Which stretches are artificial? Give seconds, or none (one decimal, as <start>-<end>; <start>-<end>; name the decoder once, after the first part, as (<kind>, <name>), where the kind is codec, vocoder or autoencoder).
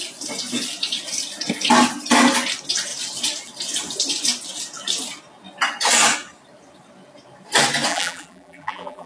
7.9-9.1 (vocoder, BigVGAN v2)